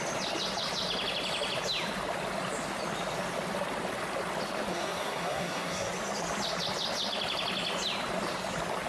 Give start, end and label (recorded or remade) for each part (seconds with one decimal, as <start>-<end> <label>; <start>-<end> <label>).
0.0-4.7 recorded; 4.7-5.9 remade; 5.9-8.9 recorded